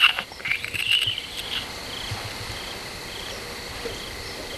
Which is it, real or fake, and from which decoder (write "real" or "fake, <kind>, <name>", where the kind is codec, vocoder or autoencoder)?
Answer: real